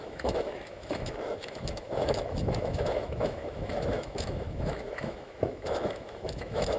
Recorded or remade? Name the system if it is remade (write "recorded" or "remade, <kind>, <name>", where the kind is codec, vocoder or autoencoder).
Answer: remade, autoencoder, DAC-VAE